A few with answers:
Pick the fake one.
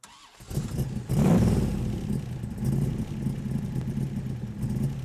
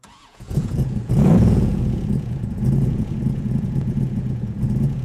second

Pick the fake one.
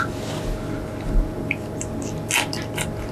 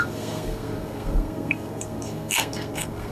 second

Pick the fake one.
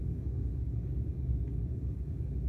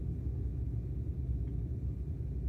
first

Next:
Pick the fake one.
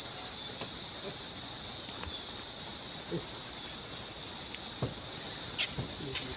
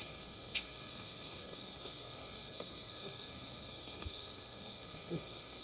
second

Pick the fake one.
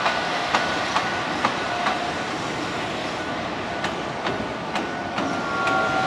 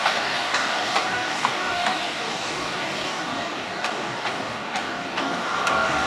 second